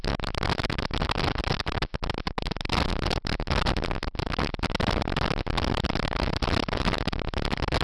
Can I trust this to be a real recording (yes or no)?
yes